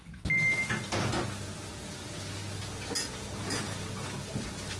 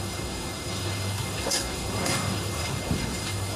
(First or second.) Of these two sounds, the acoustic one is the first